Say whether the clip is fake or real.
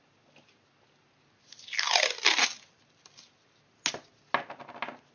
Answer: real